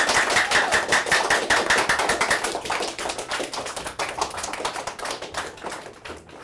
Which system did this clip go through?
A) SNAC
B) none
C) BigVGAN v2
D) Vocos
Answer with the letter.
B